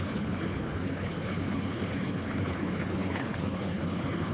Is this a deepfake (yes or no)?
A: yes